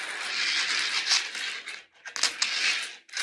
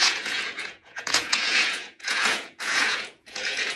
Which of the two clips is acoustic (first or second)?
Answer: first